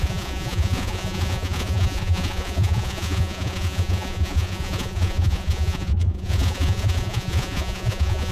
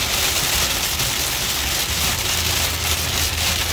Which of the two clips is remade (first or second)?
first